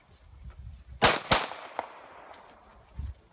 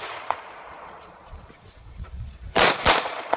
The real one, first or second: first